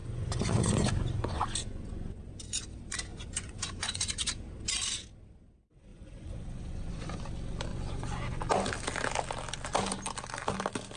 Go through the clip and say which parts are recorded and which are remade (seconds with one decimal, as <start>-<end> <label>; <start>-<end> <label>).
0.0-2.3 remade; 2.3-3.1 recorded; 3.1-4.3 remade; 4.3-5.9 recorded; 5.9-7.2 remade; 7.2-7.7 recorded; 7.7-8.4 remade; 8.4-11.0 recorded